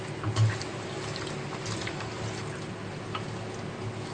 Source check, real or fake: real